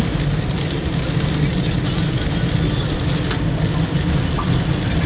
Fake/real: real